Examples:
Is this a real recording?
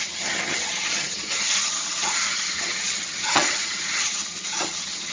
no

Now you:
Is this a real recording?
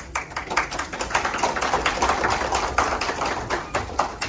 yes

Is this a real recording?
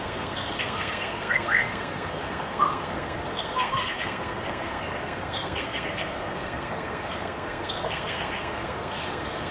no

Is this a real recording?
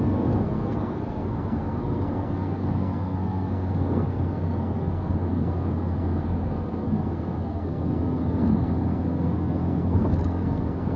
no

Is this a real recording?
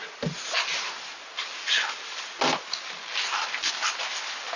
yes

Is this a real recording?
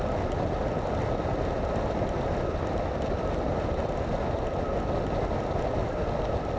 yes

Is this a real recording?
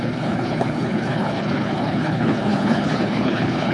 no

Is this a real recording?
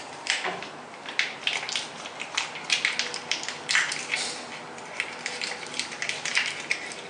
yes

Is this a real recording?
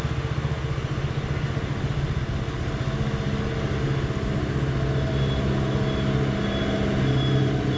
yes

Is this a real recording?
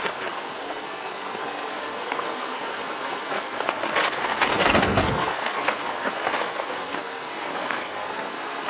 no